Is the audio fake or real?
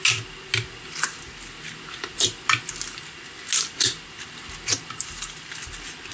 real